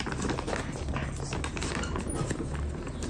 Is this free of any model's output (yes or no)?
yes